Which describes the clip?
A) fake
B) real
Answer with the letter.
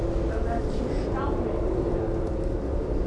B